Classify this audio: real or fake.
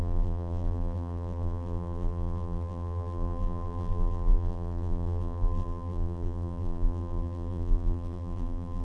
fake